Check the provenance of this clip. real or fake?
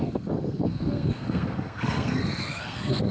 fake